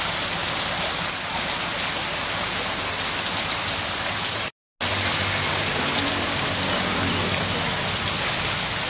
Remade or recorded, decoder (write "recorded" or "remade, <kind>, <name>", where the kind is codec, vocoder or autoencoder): recorded